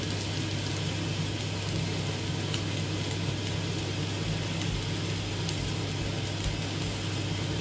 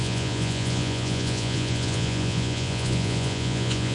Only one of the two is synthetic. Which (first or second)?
second